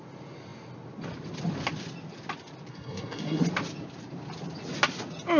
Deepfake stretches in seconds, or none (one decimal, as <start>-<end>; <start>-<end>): 2.7-3.4